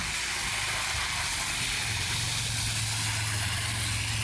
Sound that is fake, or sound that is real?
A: real